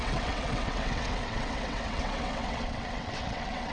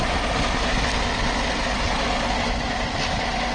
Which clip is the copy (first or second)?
first